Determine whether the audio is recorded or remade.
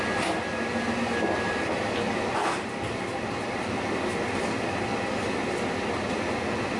recorded